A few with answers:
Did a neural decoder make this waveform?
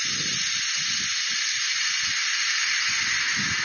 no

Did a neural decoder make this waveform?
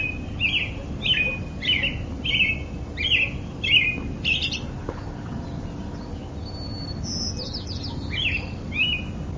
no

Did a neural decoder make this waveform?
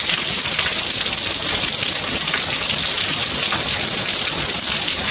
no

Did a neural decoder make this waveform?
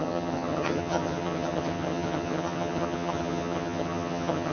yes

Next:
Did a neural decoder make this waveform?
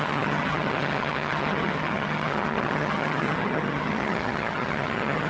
yes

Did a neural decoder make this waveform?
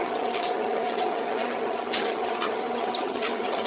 yes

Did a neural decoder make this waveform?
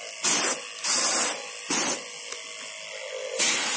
no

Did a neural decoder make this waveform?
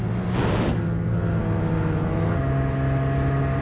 no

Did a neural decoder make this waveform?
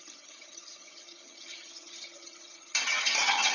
yes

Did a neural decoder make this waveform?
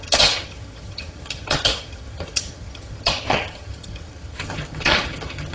yes